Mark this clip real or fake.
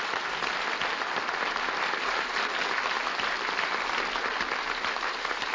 real